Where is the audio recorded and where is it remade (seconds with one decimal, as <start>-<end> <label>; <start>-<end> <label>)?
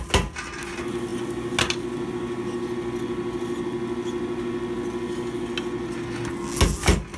0.0-7.2 recorded